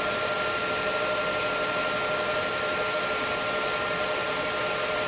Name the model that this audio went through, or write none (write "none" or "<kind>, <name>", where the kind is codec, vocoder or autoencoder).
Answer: none